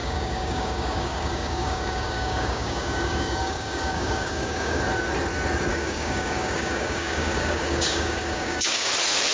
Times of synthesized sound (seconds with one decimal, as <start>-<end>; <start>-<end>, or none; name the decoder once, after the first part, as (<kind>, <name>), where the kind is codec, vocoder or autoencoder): 0.0-4.8 (codec, DAC); 5.7-8.9